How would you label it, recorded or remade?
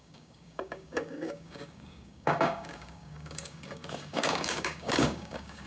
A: remade